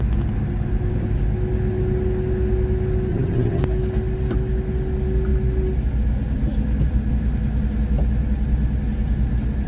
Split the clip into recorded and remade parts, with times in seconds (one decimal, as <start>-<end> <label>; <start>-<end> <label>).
0.0-3.1 recorded; 3.1-3.6 remade; 3.6-9.7 recorded